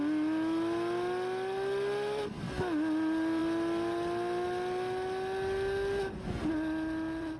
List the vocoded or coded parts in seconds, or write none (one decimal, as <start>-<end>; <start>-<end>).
none